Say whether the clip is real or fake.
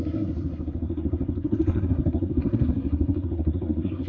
fake